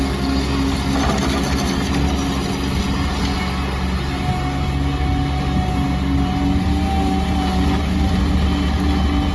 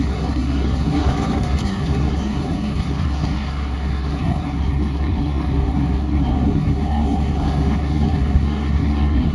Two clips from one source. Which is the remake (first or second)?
second